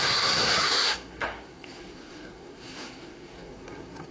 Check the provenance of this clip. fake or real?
fake